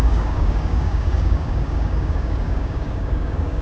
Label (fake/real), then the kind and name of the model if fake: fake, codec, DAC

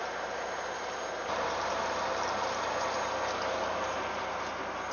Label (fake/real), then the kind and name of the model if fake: real